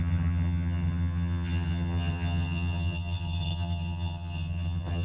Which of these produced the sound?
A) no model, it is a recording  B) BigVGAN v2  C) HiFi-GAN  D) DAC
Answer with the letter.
C